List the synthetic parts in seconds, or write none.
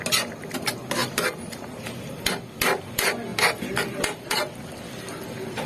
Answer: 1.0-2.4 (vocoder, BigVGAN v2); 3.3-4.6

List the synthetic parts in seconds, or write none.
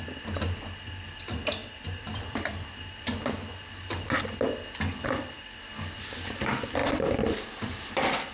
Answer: 1.6-2.7 (vocoder, BigVGAN v2); 6.8-7.9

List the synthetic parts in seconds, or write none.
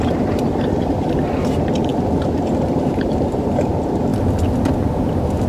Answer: 0.0-1.9 (vocoder, BigVGAN v2); 3.0-4.1; 5.0-5.5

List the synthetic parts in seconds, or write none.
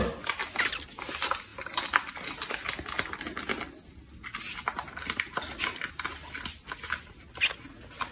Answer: none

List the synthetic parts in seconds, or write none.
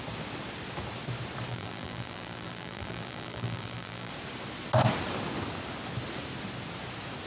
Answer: 1.5-4.1 (vocoder, BigVGAN v2)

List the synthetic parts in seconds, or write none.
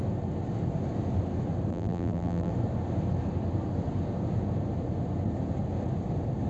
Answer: 1.7-2.5 (vocoder, BigVGAN v2)